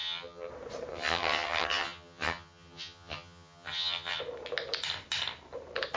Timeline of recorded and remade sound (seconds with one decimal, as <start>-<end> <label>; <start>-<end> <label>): 0.0-0.5 remade; 0.5-0.9 recorded; 0.9-4.2 remade; 4.2-6.0 recorded